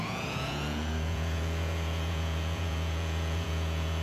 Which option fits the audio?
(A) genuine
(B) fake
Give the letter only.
B